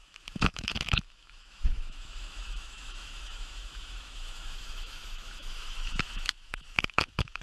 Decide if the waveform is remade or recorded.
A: remade